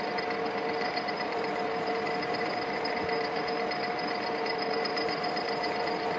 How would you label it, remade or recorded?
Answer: recorded